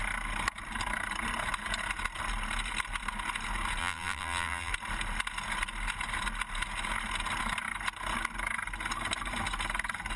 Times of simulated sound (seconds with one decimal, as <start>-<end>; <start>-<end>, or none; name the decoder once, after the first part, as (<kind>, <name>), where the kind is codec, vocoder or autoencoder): 3.8-4.7 (vocoder, BigVGAN v2)